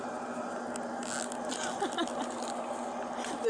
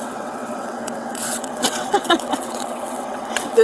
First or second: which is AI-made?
second